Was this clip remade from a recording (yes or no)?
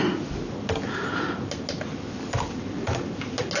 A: no